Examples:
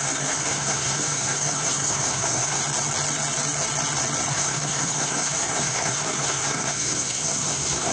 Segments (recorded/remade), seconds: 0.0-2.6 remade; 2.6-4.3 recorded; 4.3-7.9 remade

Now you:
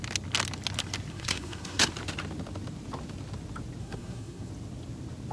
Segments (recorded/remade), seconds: 0.0-1.1 recorded; 1.1-1.9 remade; 1.9-3.8 recorded; 3.8-4.5 remade; 4.5-5.3 recorded

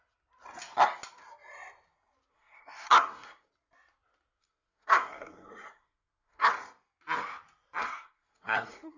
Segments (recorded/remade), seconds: 0.0-2.3 recorded; 2.3-3.5 remade; 3.5-4.4 recorded; 4.4-6.5 remade; 6.5-7.8 recorded; 7.8-9.0 remade

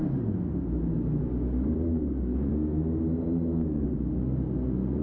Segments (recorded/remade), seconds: 0.0-5.0 recorded

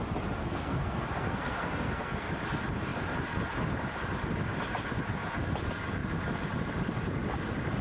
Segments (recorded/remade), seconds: 0.0-0.4 recorded; 0.4-2.3 remade; 2.3-7.8 recorded

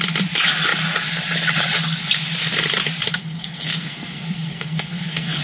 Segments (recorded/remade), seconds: 0.0-3.1 recorded; 3.1-5.4 remade

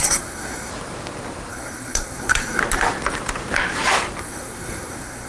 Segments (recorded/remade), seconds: 0.0-0.7 remade; 0.7-1.5 recorded; 1.5-2.6 remade; 2.6-4.2 recorded; 4.2-5.3 remade